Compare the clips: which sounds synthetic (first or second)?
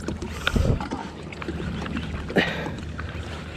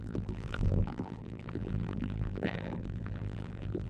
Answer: second